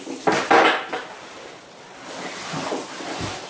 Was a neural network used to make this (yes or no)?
no